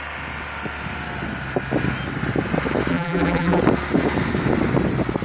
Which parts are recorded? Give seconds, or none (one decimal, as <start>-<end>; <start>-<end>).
0.0-2.9; 3.6-5.2